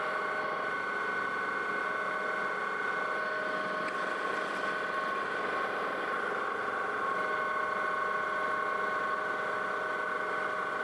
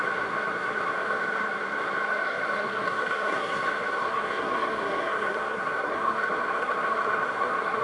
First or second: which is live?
first